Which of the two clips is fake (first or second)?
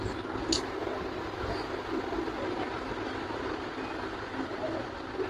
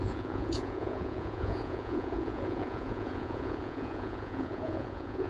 second